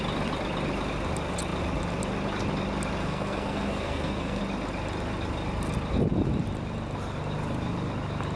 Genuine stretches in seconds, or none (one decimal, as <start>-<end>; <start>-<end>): 0.0-3.0; 4.4-8.4